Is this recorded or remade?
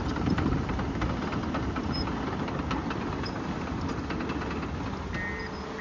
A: recorded